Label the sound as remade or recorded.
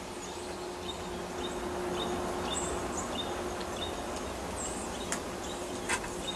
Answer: recorded